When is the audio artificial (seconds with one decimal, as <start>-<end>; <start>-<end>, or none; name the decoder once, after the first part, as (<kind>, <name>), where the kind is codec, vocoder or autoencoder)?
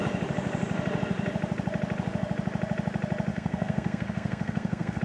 3.3-5.0 (codec, SNAC)